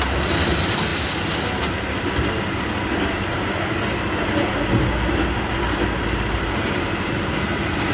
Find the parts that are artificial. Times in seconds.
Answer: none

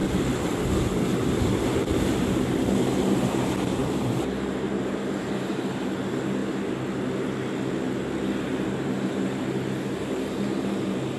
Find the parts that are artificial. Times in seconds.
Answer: 3.8-5.7 (vocoder, BigVGAN v2)